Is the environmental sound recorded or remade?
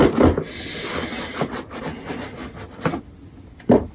recorded